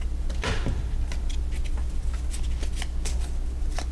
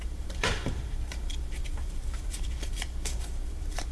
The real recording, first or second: first